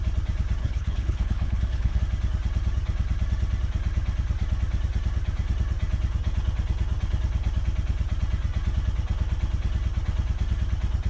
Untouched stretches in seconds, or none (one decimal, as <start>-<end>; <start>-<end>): 0.0-0.6; 2.0-11.1